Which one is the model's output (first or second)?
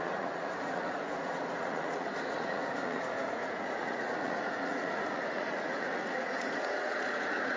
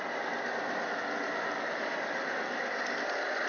first